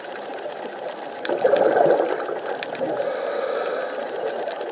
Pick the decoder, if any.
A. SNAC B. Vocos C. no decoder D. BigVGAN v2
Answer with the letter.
C